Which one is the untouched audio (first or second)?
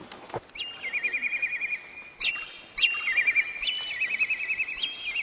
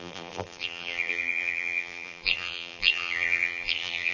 first